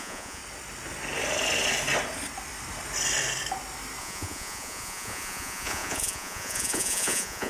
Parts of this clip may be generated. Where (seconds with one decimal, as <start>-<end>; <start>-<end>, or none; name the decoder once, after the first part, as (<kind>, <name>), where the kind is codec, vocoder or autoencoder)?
0.0-0.4 (vocoder, Vocos); 4.0-7.5